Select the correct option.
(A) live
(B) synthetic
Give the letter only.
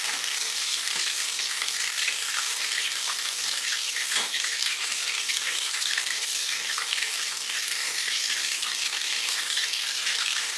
B